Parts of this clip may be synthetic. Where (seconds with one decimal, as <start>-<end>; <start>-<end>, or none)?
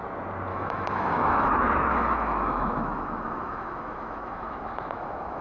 0.5-1.5; 1.9-5.4